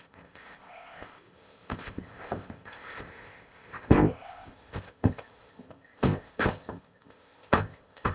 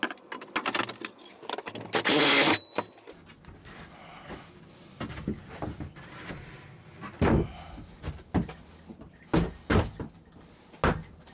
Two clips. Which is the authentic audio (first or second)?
second